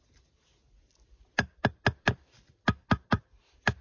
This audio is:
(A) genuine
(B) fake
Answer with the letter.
A